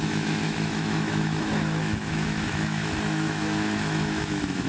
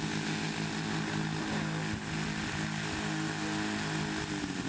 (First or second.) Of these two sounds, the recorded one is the second